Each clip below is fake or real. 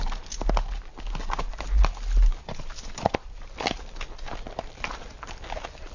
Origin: real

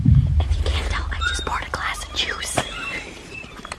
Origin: fake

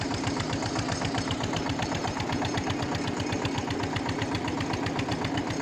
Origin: real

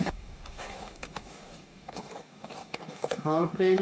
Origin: fake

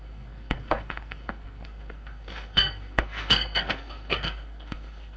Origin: fake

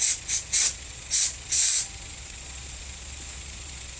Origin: fake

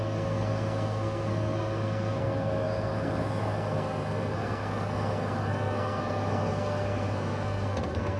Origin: fake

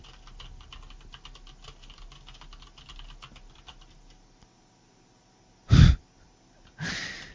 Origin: real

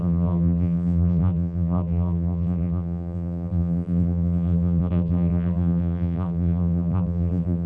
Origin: fake